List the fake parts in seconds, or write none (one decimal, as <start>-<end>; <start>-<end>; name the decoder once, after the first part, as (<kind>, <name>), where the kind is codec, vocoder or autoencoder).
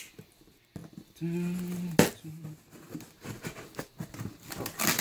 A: none